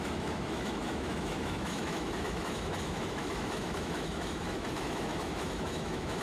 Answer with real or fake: fake